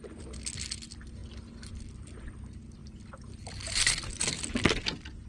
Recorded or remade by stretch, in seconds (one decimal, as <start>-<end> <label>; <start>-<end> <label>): 0.0-2.8 recorded; 2.8-4.0 remade; 4.0-5.3 recorded